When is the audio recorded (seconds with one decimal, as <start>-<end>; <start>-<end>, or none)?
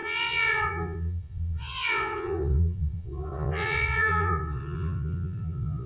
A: none